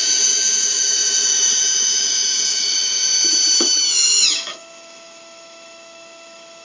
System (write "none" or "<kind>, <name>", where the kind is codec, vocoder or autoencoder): autoencoder, DAC-VAE